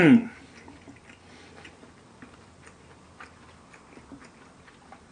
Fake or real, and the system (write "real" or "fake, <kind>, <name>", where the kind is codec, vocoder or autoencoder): real